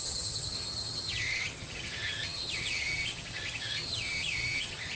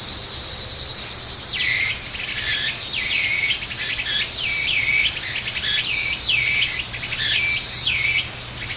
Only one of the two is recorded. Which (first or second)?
second